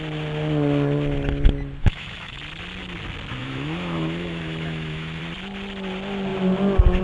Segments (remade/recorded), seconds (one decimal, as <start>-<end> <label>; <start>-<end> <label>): 0.0-1.8 recorded; 1.8-2.4 remade; 2.4-3.4 recorded; 3.4-5.2 remade; 5.2-7.0 recorded